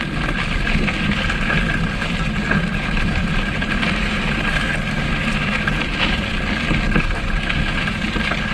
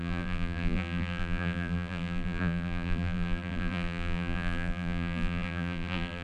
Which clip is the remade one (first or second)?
second